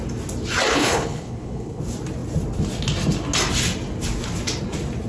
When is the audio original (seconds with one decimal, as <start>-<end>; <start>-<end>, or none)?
0.0-0.7; 1.8-5.1